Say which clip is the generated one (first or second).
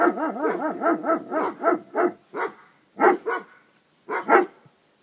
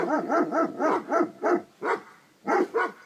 second